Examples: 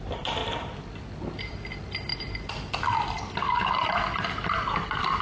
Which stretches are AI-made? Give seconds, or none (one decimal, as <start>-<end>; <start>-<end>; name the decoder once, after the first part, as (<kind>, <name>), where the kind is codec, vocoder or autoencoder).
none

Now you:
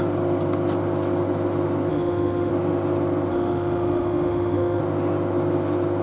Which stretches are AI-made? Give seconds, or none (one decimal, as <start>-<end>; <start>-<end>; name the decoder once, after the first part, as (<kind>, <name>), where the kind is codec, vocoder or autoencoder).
1.9-2.5 (autoencoder, DAC-VAE); 3.3-4.8

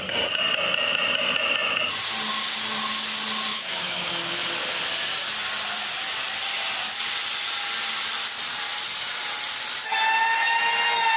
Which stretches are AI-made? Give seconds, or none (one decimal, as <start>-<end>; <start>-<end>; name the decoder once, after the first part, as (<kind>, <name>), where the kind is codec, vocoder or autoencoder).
3.5-4.1 (autoencoder, DAC-VAE)